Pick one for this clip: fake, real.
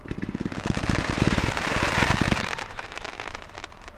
fake